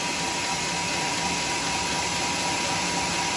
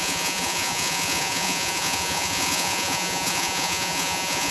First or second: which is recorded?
first